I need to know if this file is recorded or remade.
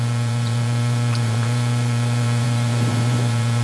remade